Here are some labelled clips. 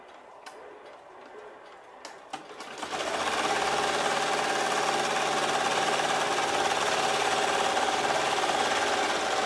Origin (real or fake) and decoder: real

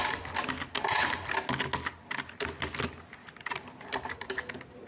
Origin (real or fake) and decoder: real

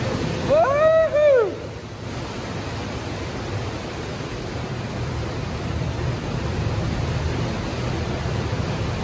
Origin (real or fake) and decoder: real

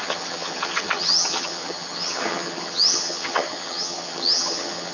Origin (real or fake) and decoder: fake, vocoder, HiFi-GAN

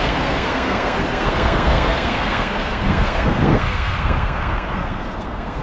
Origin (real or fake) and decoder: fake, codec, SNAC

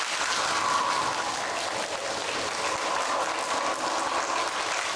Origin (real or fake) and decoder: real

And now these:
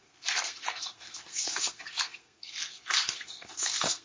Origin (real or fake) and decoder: fake, codec, SNAC